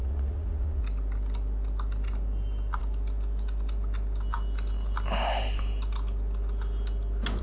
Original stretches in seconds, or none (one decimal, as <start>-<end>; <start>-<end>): 0.8-7.4